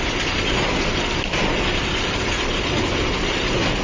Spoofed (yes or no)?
no